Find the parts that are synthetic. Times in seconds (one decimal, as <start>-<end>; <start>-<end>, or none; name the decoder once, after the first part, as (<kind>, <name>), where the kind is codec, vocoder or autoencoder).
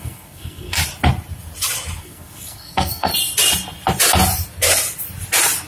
0.0-0.8 (codec, SNAC); 2.0-3.1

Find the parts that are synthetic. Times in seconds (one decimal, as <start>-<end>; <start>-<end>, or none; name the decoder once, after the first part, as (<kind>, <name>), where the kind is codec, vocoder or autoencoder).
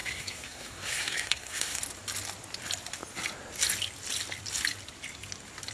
0.0-1.8 (codec, SNAC)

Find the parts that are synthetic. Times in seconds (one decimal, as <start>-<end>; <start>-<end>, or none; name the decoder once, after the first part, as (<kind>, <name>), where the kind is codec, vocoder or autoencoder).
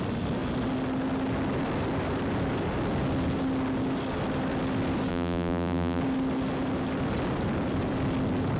5.1-6.0 (vocoder, BigVGAN v2)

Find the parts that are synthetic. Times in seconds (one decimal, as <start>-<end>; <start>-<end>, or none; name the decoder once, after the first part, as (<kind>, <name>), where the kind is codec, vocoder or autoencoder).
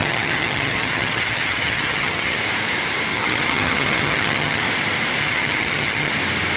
0.0-2.4 (vocoder, HiFi-GAN); 3.1-4.6; 5.2-6.1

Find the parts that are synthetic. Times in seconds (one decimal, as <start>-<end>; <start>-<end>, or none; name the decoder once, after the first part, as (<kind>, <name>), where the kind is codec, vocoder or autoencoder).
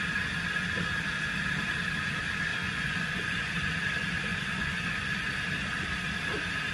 2.5-3.5 (vocoder, Vocos); 4.3-5.3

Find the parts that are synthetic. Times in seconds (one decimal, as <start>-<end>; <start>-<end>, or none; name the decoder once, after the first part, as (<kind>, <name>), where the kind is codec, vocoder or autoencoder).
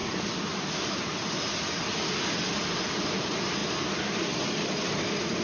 0.0-1.0 (vocoder, BigVGAN v2); 3.6-5.4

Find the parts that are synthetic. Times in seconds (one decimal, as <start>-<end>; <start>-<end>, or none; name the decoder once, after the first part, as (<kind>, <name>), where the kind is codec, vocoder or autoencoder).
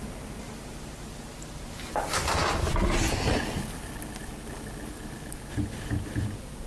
none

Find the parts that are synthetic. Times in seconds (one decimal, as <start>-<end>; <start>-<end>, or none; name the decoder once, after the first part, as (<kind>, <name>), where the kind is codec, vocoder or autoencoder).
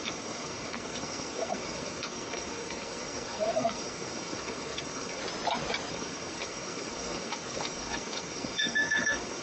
0.0-5.2 (codec, SNAC); 5.9-9.4